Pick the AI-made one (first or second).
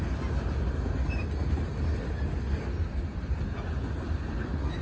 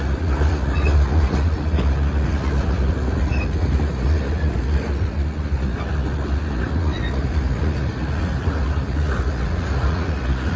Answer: second